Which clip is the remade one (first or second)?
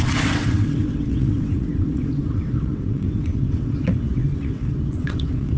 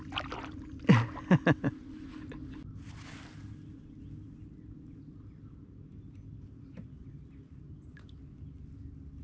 first